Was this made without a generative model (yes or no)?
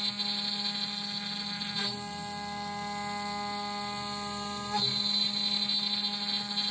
yes